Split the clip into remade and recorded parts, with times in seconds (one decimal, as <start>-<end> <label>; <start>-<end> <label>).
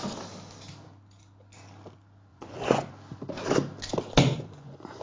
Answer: 0.0-2.3 recorded; 2.3-2.9 remade; 2.9-4.3 recorded; 4.3-5.0 remade